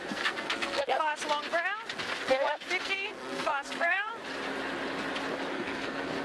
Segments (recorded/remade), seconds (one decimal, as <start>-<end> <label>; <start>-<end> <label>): 0.0-1.1 remade; 1.1-2.8 recorded; 2.8-4.1 remade; 4.1-5.5 recorded; 5.5-6.2 remade